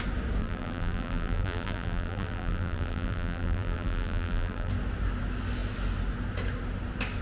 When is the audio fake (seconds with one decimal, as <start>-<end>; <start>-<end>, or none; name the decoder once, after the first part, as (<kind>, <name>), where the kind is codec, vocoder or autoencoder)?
0.4-4.7 (vocoder, BigVGAN v2)